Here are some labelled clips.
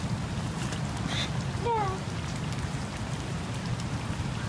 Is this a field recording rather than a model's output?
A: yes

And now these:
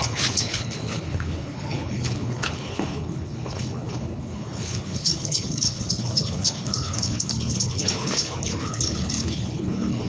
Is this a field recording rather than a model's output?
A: no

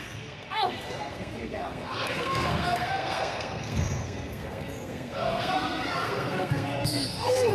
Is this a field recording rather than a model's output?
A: no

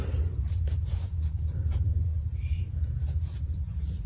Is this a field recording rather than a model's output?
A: no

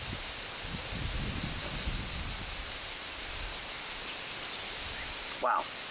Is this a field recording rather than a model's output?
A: yes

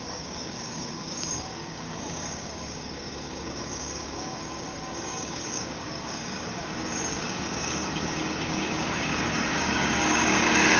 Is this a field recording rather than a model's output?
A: no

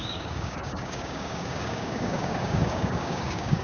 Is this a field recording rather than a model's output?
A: no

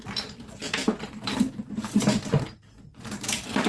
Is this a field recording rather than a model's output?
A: no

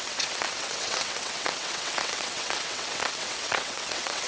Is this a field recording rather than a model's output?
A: no